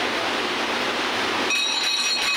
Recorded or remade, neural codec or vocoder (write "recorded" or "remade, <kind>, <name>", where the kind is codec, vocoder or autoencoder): recorded